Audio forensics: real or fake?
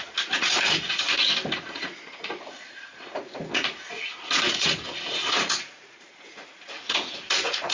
fake